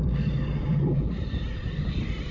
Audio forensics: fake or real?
real